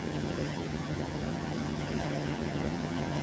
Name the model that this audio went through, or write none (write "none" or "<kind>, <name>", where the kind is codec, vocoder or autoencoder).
vocoder, HiFi-GAN